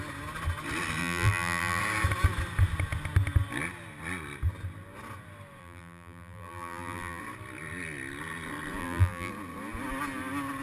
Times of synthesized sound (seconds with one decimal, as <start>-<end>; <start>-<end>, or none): 1.0-1.8; 5.6-7.2; 8.8-9.3